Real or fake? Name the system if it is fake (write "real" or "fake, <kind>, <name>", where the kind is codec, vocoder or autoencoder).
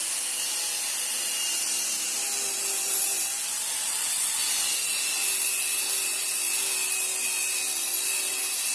real